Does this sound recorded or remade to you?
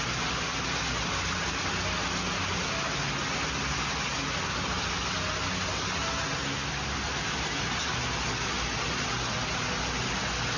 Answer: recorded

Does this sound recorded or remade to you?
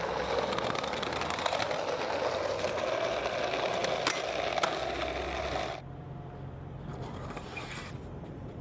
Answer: recorded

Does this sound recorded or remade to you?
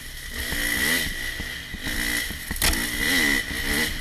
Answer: recorded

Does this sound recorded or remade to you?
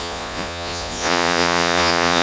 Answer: remade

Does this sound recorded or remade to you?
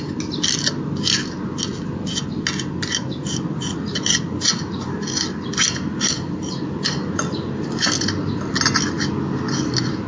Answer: recorded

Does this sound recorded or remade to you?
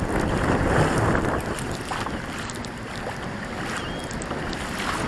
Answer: recorded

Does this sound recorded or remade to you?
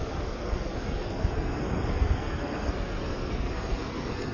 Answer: remade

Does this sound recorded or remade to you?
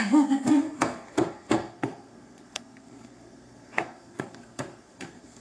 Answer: remade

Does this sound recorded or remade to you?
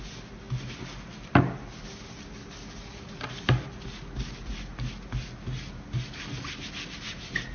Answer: recorded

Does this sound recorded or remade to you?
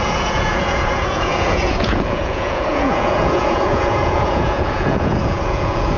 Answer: remade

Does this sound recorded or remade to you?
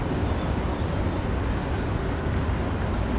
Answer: recorded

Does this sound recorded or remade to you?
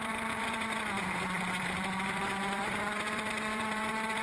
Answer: remade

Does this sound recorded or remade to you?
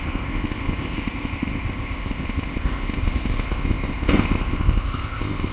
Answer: remade